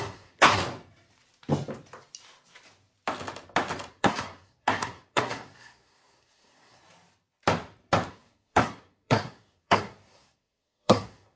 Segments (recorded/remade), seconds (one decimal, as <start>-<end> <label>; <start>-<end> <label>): 0.0-0.6 remade; 0.6-3.9 recorded; 3.9-6.8 remade; 6.8-8.1 recorded; 8.1-11.4 remade